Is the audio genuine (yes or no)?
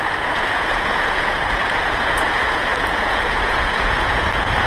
no